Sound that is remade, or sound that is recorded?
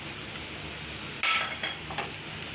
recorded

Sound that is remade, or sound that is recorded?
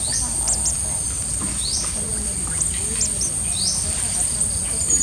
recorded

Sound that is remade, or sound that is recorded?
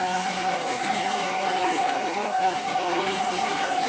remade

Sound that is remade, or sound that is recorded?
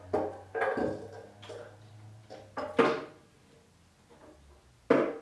recorded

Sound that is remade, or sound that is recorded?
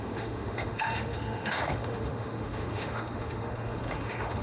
remade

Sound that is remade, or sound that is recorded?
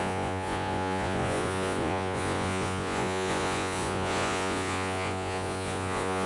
remade